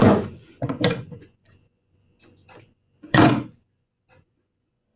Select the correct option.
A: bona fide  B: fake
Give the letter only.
B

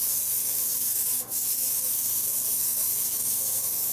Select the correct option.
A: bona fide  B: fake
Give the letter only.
B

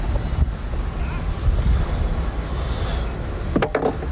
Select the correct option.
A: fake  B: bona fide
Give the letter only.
B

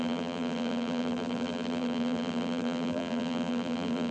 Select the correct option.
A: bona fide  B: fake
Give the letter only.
B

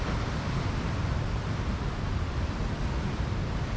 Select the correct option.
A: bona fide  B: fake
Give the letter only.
A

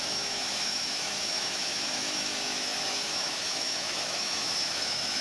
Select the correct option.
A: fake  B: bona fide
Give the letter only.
A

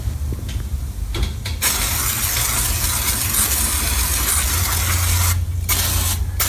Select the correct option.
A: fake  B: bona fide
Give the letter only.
B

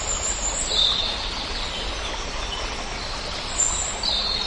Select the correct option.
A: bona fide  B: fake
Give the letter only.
A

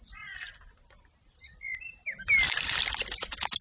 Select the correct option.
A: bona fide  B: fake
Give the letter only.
A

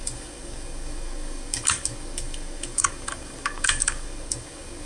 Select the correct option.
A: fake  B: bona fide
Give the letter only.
A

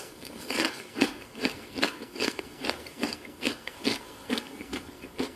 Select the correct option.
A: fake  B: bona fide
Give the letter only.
A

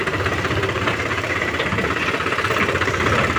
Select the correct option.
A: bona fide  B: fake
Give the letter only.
B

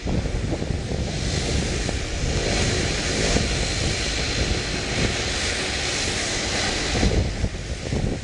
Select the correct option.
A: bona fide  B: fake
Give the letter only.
A